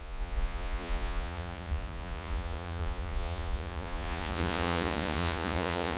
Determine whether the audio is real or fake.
fake